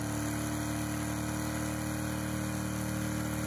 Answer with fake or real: real